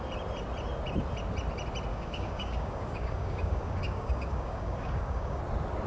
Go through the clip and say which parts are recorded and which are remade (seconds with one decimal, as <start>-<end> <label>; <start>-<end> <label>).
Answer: 0.0-1.9 recorded; 1.9-5.4 remade; 5.4-5.9 recorded

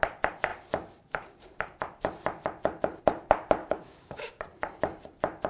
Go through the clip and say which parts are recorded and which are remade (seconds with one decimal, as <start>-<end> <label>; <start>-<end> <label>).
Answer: 0.0-3.6 recorded; 3.6-4.4 remade; 4.4-5.5 recorded

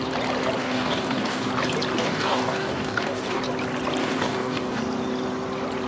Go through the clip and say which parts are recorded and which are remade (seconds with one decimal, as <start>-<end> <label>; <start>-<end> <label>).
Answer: 0.0-0.6 recorded; 0.6-1.5 remade; 1.5-2.0 recorded; 2.0-3.4 remade; 3.4-4.0 recorded; 4.0-4.8 remade; 4.8-5.9 recorded

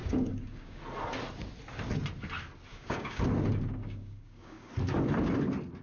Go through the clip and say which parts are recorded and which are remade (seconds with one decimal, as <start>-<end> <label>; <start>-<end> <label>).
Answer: 0.0-0.8 remade; 0.8-2.7 recorded; 2.7-3.2 remade; 3.2-3.8 recorded; 3.8-4.7 remade; 4.7-5.8 recorded

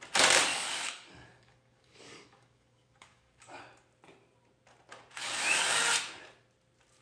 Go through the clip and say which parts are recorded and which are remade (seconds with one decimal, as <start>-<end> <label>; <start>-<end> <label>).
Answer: 0.0-0.5 recorded; 0.5-3.6 remade; 3.6-5.2 recorded; 5.2-5.8 remade; 5.8-7.0 recorded

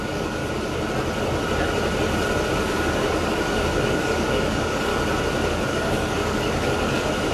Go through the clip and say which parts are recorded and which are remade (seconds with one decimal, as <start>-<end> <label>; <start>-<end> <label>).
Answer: 0.0-0.4 remade; 0.4-2.6 recorded; 2.6-4.9 remade; 4.9-5.7 recorded; 5.7-7.3 remade

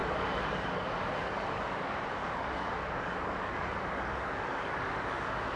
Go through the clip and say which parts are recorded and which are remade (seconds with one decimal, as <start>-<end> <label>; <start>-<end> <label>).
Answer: 0.0-5.6 remade

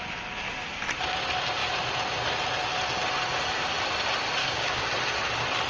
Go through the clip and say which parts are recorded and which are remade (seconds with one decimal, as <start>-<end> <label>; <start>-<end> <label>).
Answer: 0.0-4.4 recorded; 4.4-4.9 remade; 4.9-5.7 recorded